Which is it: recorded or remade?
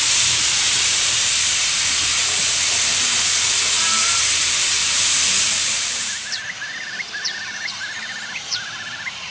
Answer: remade